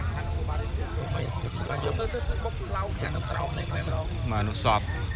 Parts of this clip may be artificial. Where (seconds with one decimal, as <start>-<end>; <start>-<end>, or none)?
1.0-2.0; 3.0-3.9